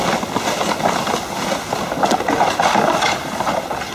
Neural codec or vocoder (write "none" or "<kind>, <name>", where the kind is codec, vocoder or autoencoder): none